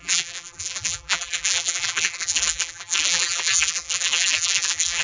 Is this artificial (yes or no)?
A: yes